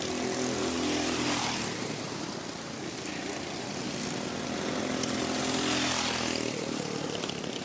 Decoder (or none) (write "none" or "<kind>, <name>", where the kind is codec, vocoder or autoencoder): none